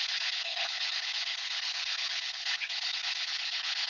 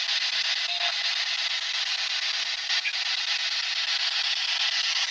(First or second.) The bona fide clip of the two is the second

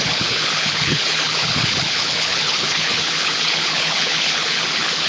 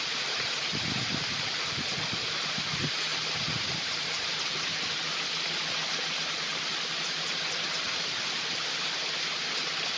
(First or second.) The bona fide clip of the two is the second